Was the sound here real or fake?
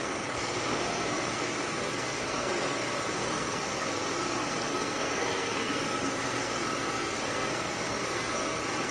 fake